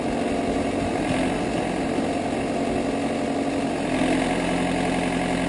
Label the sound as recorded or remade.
recorded